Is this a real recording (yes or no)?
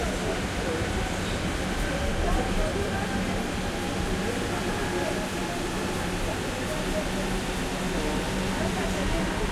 yes